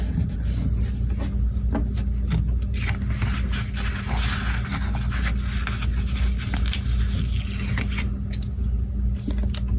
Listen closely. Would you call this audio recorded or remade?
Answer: recorded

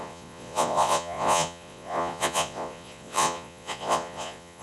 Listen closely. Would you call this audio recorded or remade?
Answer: remade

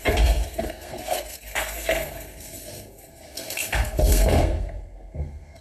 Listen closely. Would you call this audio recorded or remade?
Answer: remade